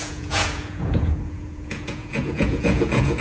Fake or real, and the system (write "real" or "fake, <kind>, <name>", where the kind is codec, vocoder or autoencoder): fake, vocoder, Vocos